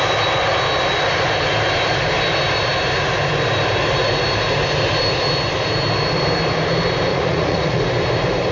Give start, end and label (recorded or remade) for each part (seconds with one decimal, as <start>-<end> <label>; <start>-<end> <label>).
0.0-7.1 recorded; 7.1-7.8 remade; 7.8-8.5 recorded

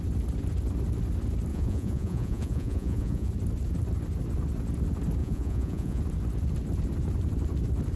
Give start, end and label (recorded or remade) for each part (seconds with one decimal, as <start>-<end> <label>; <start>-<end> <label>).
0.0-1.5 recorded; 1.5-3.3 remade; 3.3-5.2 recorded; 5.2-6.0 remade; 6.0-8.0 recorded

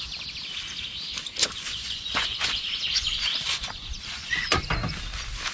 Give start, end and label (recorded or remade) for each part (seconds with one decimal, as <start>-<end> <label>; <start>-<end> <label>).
0.0-1.4 recorded; 1.4-4.7 remade; 4.7-5.5 recorded